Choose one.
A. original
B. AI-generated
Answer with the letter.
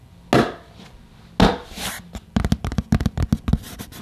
A